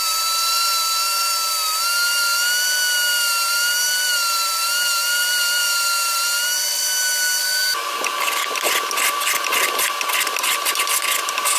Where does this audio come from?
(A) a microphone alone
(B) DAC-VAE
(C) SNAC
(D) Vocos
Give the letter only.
A